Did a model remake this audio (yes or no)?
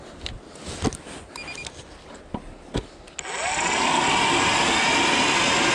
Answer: no